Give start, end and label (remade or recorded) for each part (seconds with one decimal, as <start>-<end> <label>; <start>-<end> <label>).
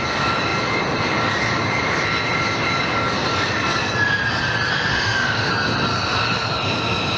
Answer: 0.0-4.9 recorded; 4.9-5.5 remade; 5.5-7.2 recorded